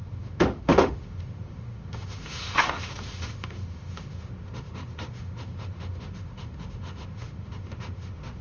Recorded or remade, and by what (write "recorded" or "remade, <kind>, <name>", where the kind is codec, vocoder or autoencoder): remade, autoencoder, DAC-VAE